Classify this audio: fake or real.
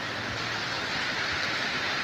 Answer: fake